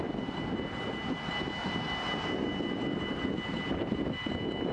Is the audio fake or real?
real